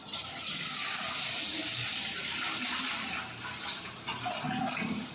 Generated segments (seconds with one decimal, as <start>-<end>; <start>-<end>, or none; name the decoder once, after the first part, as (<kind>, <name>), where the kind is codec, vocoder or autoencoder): 0.8-1.5 (vocoder, BigVGAN v2); 4.6-5.1

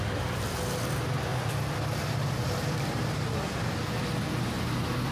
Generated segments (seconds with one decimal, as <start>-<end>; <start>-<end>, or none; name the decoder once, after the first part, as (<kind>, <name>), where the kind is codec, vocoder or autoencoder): 1.3-3.7 (vocoder, BigVGAN v2)